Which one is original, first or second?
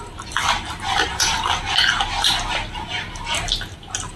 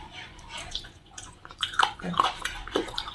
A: first